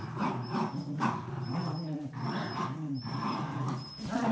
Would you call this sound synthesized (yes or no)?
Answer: yes